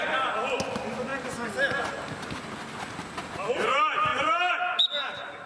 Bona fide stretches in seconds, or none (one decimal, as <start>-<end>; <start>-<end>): 0.0-4.1; 4.9-5.5